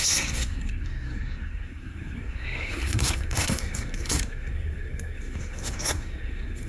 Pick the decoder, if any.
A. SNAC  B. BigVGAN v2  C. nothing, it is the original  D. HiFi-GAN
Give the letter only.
A